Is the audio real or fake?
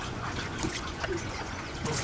fake